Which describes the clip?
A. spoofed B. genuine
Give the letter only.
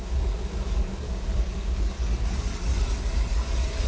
A